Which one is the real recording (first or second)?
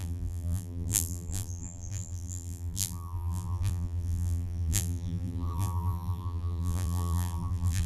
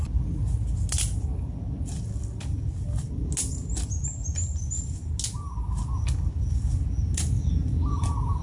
second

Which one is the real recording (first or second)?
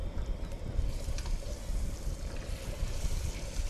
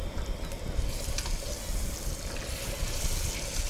second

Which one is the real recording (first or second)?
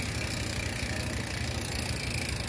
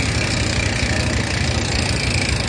first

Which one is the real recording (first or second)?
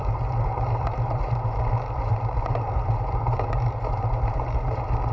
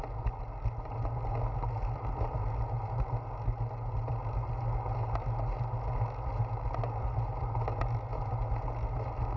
second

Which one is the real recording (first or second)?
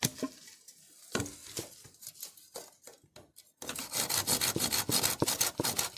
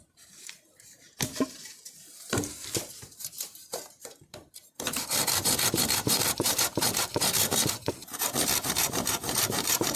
first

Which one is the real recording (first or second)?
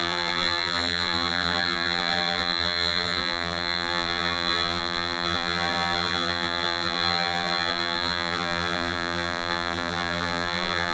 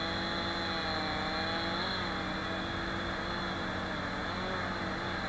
second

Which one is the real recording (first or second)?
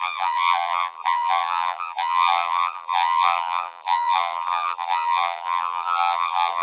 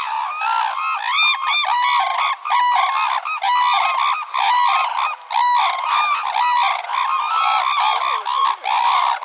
second